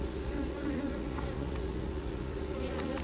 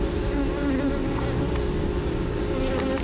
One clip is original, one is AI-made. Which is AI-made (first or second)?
first